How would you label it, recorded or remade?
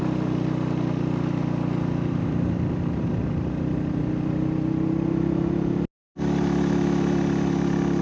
recorded